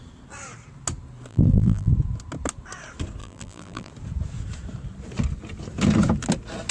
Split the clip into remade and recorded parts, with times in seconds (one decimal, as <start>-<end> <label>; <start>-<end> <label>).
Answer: 0.0-1.3 recorded; 1.3-1.9 remade; 1.9-3.2 recorded; 3.2-3.9 remade; 3.9-6.7 recorded